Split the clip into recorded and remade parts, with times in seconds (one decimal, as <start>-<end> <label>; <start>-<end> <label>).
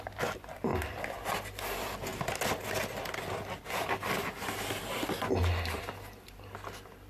0.0-7.1 recorded